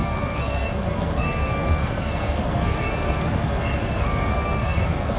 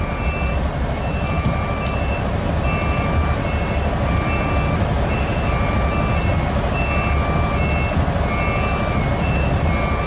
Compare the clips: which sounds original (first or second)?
second